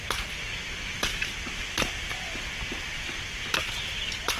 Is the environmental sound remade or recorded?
recorded